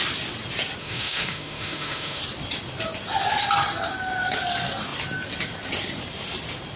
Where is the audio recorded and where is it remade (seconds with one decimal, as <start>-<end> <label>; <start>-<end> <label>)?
0.0-0.8 recorded; 0.8-2.2 remade; 2.2-6.8 recorded